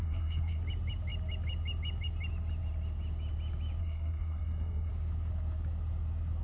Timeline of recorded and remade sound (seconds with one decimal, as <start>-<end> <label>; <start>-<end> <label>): 0.0-0.6 remade; 0.6-3.8 recorded; 3.8-4.9 remade; 4.9-6.4 recorded